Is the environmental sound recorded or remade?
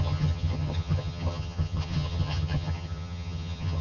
remade